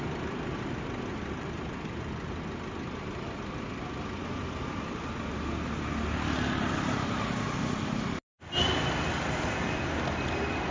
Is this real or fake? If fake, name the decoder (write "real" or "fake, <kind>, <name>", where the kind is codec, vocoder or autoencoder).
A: real